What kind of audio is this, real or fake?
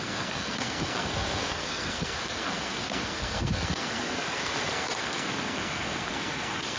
fake